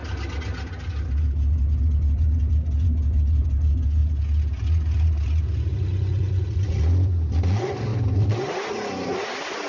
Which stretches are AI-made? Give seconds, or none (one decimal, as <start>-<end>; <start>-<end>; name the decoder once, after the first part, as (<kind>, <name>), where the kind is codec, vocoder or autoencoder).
none